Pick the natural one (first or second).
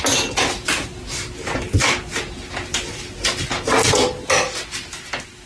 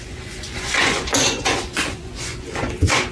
first